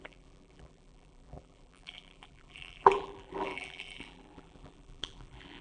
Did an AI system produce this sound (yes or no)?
yes